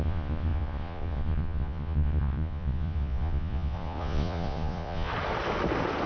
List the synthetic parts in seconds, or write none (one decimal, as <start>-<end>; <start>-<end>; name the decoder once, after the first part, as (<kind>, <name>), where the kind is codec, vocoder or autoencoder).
0.0-5.1 (vocoder, Vocos)